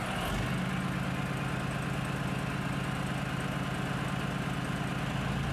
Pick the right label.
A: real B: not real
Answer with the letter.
A